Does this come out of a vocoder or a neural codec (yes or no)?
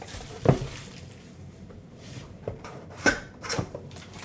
yes